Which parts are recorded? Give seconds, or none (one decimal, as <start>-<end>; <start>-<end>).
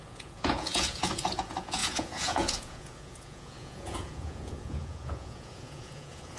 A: none